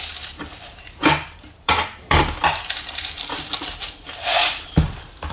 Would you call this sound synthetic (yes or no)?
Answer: yes